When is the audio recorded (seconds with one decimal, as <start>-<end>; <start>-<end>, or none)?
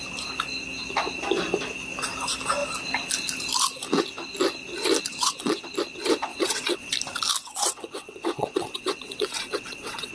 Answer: 0.0-5.1; 5.6-6.3; 6.9-7.4